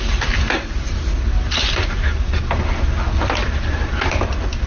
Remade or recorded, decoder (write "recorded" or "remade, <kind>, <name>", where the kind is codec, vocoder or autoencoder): recorded